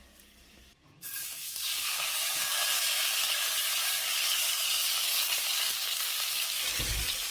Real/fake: fake